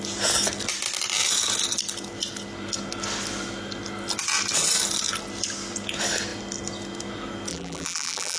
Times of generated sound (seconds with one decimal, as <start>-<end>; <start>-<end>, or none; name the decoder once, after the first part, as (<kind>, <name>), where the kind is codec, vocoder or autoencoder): 7.5-8.4 (vocoder, BigVGAN v2)